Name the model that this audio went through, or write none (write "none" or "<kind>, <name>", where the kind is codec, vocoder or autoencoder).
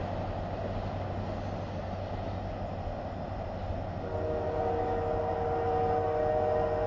none